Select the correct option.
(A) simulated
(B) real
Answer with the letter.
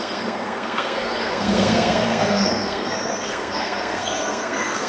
A